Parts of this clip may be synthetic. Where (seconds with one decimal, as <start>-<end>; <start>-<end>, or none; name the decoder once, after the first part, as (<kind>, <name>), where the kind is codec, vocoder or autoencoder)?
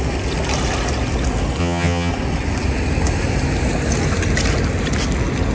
1.6-2.1 (vocoder, HiFi-GAN)